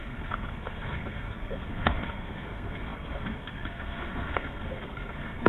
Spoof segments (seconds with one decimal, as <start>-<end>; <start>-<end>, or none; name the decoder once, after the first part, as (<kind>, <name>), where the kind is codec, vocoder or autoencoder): 0.0-5.5 (codec, SNAC)

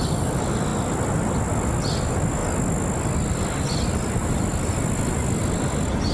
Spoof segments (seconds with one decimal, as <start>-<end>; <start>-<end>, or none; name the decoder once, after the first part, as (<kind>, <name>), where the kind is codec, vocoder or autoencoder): none

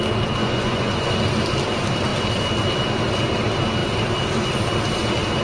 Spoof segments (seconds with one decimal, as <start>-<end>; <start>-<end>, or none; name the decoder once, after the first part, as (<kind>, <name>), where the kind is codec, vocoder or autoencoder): 0.4-1.1 (vocoder, Vocos)

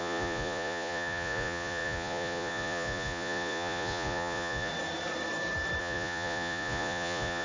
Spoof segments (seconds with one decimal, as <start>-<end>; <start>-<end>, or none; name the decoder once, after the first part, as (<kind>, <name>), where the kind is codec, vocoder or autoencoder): 0.0-4.7 (vocoder, Vocos); 5.8-7.4

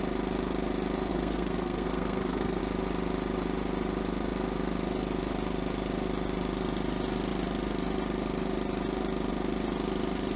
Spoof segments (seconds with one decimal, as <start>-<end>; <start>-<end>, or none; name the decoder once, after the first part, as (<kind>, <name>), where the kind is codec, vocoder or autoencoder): 1.1-2.6 (codec, SNAC)

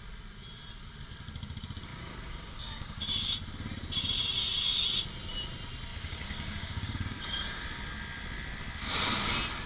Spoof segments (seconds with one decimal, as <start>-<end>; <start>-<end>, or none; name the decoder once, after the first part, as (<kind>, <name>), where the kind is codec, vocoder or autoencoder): 1.9-3.0 (codec, DAC); 5.9-7.6